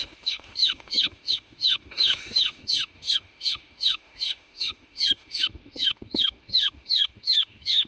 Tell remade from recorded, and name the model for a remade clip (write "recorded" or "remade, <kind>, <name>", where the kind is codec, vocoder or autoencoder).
remade, autoencoder, DAC-VAE